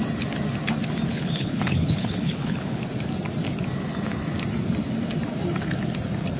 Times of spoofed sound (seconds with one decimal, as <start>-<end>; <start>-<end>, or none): 1.1-2.8